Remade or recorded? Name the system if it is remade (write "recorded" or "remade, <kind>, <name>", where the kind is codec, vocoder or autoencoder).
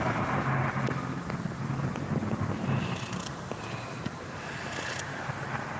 recorded